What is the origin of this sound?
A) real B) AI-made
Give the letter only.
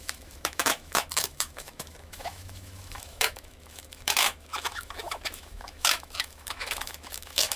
B